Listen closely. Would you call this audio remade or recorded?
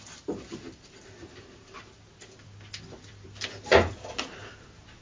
recorded